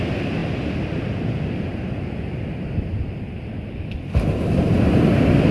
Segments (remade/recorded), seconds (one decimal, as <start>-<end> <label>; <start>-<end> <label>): 0.0-5.5 recorded